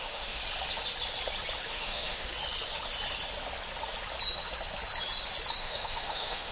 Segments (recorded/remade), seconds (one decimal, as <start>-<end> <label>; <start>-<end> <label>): 0.0-0.4 remade; 0.4-1.7 recorded; 1.7-2.3 remade; 2.3-5.6 recorded; 5.6-6.5 remade